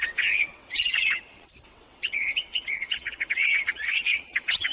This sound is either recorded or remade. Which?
remade